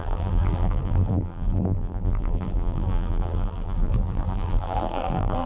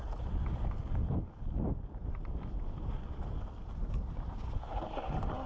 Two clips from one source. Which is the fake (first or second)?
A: first